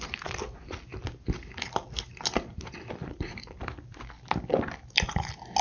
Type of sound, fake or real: real